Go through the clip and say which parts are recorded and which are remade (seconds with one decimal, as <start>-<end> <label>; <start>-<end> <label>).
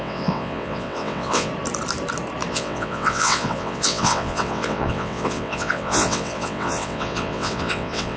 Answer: 0.0-1.5 remade; 1.5-2.5 recorded; 2.5-8.2 remade